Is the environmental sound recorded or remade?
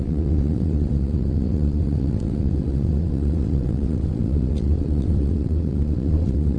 remade